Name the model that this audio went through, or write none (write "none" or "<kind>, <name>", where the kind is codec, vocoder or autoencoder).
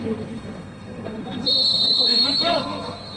codec, SNAC